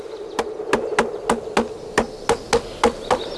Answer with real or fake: real